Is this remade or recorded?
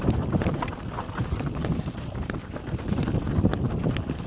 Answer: recorded